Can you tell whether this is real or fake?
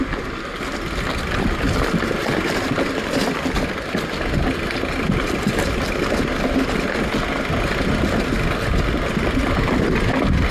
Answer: real